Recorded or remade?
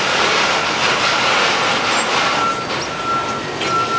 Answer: recorded